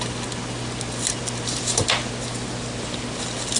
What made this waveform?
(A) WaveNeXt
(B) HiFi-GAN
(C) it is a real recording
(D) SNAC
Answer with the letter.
C